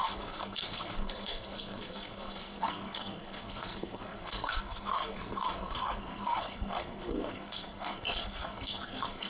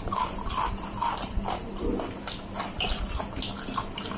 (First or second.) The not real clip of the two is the first